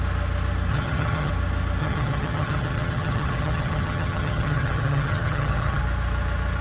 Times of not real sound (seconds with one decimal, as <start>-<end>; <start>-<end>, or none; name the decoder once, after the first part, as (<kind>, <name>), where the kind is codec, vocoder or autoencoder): 0.7-1.3 (vocoder, HiFi-GAN); 1.8-5.8